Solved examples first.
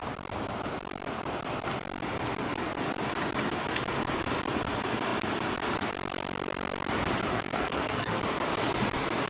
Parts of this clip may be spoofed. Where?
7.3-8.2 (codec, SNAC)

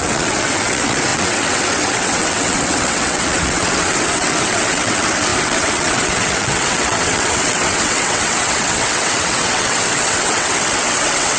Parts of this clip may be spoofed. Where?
0.0-11.4 (vocoder, WaveNeXt)

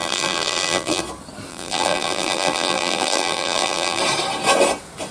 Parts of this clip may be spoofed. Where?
0.0-1.0 (vocoder, BigVGAN v2); 1.5-4.0

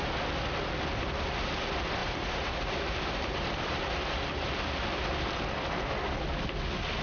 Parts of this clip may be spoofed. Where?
2.0-3.8 (vocoder, BigVGAN v2)

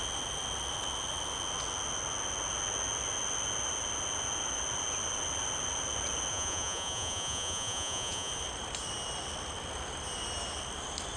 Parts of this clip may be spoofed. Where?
6.3-8.3 (vocoder, Vocos)